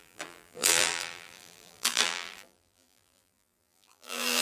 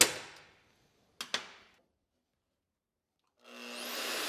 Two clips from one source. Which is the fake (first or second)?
first